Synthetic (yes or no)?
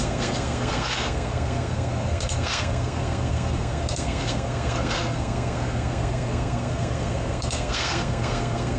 yes